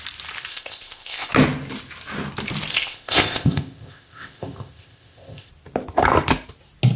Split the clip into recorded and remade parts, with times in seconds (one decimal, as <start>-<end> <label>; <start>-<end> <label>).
0.0-0.5 recorded; 0.5-1.3 remade; 1.3-2.7 recorded; 2.7-5.5 remade; 5.5-7.0 recorded